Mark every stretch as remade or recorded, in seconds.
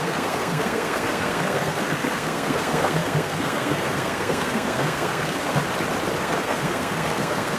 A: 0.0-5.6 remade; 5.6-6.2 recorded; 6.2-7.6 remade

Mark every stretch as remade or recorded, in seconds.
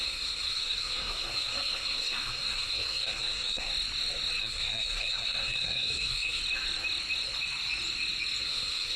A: 0.0-3.7 remade; 3.7-4.4 recorded; 4.4-6.4 remade; 6.4-8.4 recorded; 8.4-9.0 remade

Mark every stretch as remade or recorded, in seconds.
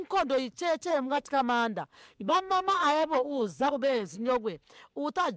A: 0.0-0.9 recorded; 0.9-1.4 remade; 1.4-1.9 recorded; 1.9-4.3 remade; 4.3-5.4 recorded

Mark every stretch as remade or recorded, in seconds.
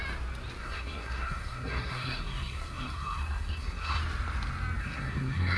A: 0.0-0.6 recorded; 0.6-4.0 remade; 4.0-4.8 recorded; 4.8-5.6 remade